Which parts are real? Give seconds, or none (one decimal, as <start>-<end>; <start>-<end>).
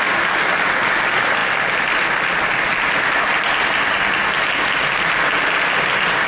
0.0-6.3